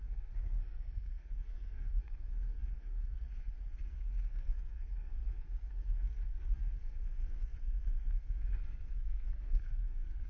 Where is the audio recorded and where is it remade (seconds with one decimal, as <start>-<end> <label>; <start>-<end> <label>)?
0.0-10.3 remade